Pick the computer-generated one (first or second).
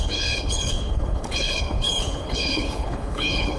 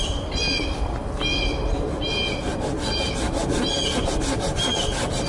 first